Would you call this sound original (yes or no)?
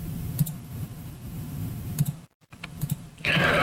no